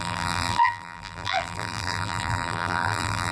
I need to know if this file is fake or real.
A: fake